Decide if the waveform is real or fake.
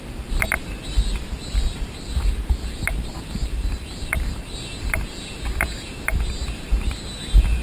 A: real